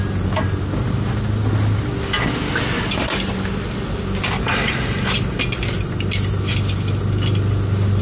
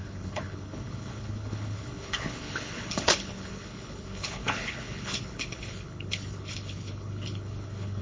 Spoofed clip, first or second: second